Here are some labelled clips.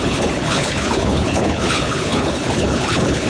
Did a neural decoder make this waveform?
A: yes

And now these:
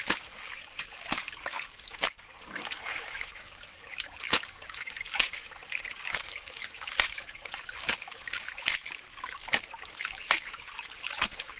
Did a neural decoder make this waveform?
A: yes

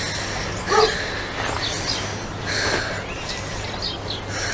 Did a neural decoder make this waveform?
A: no